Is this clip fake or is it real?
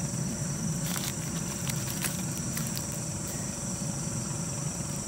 fake